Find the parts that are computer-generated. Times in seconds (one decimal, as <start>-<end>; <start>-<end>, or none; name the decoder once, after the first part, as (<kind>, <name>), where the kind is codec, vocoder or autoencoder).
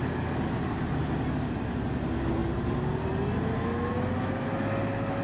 none